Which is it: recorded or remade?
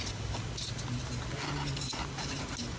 recorded